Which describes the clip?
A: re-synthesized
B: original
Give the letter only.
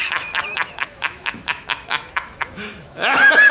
A